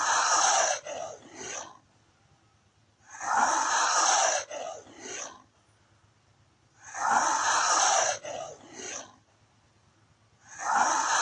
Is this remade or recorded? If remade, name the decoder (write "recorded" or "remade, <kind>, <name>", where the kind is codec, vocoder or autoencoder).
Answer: recorded